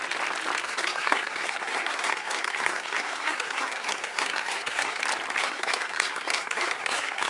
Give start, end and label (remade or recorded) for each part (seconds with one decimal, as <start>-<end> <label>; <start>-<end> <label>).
0.0-0.6 recorded; 0.6-5.0 remade; 5.0-5.4 recorded; 5.4-7.3 remade